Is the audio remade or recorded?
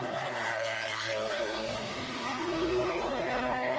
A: remade